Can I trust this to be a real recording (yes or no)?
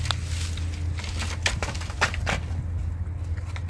yes